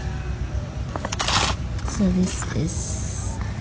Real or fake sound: real